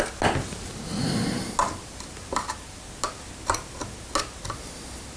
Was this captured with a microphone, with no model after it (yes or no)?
yes